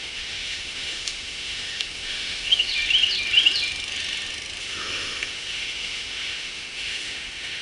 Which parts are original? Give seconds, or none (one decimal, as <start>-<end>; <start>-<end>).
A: 2.7-4.6